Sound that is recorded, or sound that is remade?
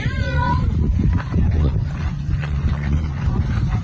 remade